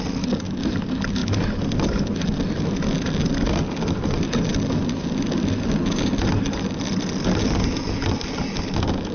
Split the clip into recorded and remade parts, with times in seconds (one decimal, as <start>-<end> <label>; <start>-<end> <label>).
0.0-9.1 recorded